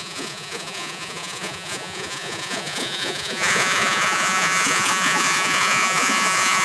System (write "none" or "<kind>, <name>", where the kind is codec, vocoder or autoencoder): vocoder, Vocos